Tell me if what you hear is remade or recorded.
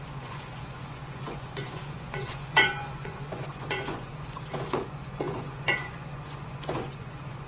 remade